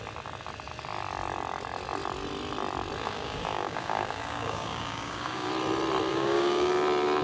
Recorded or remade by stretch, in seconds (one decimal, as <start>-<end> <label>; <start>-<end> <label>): 0.0-3.0 recorded; 3.0-5.5 remade; 5.5-6.1 recorded; 6.1-6.7 remade; 6.7-7.2 recorded